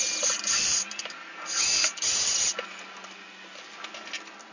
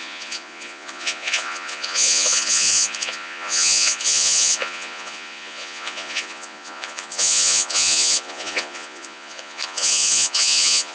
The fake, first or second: second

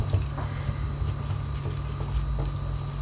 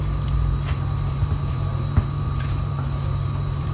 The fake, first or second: second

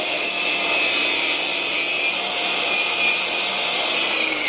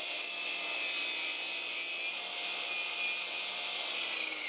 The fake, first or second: first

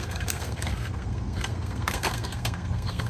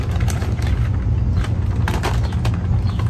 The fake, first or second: first